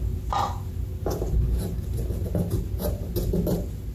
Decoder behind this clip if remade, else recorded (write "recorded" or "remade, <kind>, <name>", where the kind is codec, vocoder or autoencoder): recorded